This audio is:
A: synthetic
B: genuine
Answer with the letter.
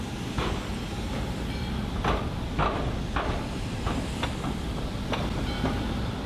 B